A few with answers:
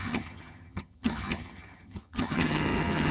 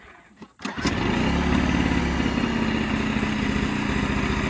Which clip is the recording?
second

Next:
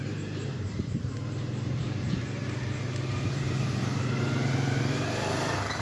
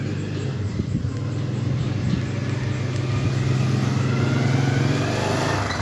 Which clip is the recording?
second